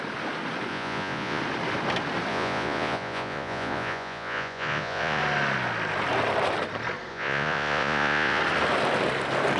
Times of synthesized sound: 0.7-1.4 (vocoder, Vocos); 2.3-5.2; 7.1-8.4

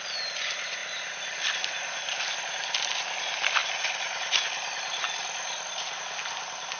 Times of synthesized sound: 3.6-6.0 (vocoder, BigVGAN v2)

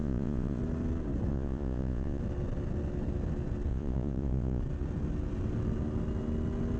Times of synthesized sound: 0.0-0.6 (vocoder, Vocos); 1.3-2.2; 3.7-4.6

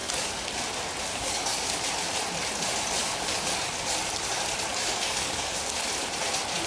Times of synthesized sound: 0.0-0.6 (codec, DAC); 1.1-1.8; 3.0-3.6; 4.7-5.7